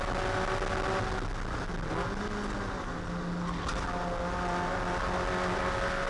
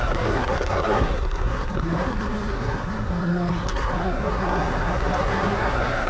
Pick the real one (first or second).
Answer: first